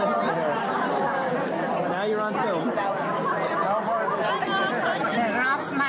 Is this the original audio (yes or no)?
yes